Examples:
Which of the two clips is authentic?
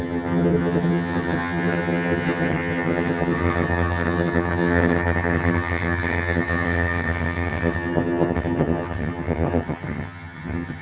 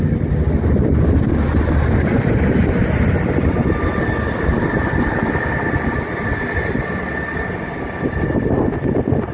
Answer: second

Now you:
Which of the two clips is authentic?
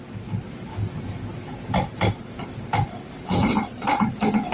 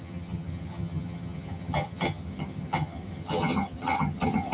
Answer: first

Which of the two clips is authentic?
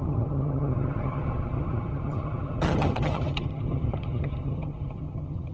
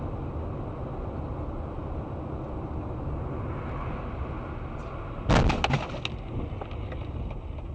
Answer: second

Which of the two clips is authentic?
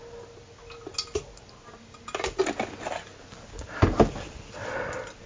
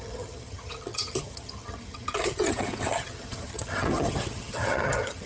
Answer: first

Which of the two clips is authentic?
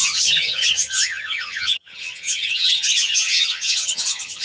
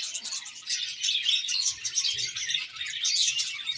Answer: second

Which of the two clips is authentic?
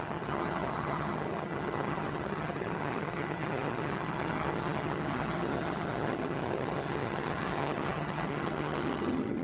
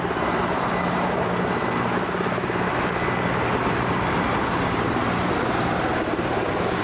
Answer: second